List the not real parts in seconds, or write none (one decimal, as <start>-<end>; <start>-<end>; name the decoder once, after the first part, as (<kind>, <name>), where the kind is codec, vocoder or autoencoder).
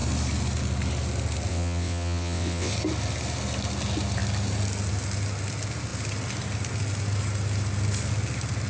1.5-2.7 (vocoder, WaveNeXt)